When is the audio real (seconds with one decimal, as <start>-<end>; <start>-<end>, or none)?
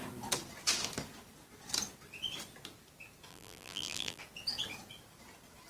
0.0-3.3; 4.2-5.7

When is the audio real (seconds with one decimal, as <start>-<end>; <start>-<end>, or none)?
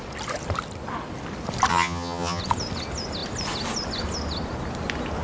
0.0-1.7; 2.4-5.2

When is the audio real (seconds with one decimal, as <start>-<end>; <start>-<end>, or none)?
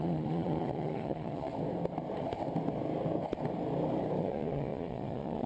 1.5-4.2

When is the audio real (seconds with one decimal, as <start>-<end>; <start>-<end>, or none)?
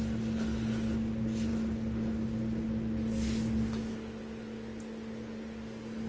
0.0-6.1